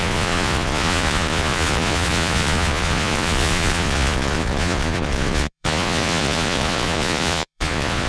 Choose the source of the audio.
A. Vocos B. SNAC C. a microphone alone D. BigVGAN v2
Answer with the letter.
A